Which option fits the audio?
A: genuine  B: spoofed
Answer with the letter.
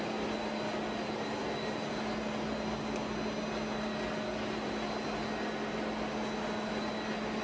A